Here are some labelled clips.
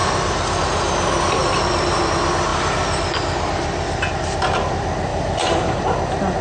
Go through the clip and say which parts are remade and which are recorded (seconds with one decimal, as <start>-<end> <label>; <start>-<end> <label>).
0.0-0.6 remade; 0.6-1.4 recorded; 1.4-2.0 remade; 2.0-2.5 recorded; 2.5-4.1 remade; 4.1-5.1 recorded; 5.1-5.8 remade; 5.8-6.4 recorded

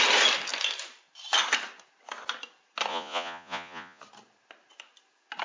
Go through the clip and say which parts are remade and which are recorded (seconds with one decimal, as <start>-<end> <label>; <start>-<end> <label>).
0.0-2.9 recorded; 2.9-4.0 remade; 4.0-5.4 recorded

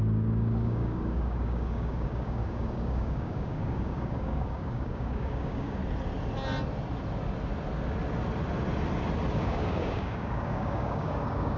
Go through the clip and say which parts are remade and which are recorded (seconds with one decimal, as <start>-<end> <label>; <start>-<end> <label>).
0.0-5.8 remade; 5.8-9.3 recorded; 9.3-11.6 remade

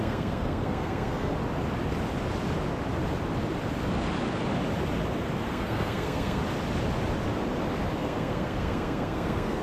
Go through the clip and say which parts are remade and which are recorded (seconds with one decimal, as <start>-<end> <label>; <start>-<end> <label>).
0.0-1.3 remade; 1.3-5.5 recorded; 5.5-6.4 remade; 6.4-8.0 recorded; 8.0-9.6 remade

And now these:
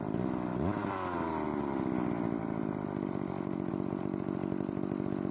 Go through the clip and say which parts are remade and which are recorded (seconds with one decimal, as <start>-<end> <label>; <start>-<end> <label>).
0.0-0.5 recorded; 0.5-3.7 remade; 3.7-5.3 recorded

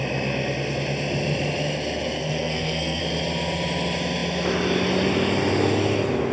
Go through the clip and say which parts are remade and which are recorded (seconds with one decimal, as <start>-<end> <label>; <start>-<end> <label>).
0.0-2.2 recorded; 2.2-3.0 remade; 3.0-6.3 recorded

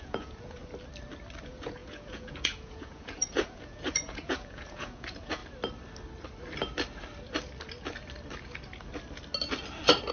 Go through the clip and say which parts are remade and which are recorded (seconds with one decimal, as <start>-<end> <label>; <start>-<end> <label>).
0.0-0.6 remade; 0.6-1.4 recorded; 1.4-5.4 remade; 5.4-10.1 recorded